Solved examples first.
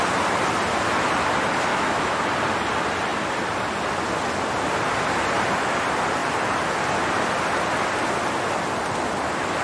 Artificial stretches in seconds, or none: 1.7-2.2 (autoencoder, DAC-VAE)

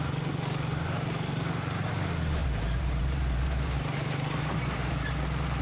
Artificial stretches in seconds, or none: 2.4-5.1 (vocoder, BigVGAN v2)